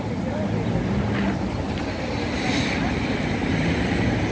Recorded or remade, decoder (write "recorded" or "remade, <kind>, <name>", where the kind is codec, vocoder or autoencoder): recorded